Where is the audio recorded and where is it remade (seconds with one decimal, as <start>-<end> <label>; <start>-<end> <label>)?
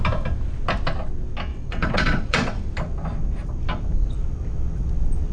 0.0-1.5 recorded; 1.5-2.7 remade; 2.7-5.3 recorded